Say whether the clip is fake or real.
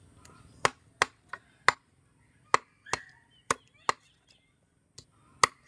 real